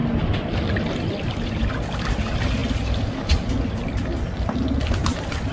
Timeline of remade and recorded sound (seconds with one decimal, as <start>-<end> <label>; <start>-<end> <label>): 0.0-5.5 recorded